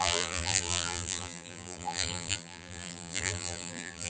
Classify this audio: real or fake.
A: fake